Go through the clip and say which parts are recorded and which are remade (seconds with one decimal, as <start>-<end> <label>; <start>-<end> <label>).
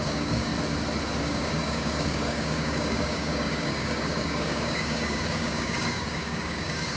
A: 0.0-0.5 remade; 0.5-1.2 recorded; 1.2-7.0 remade